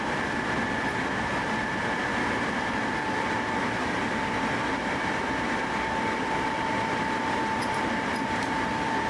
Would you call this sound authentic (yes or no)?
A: no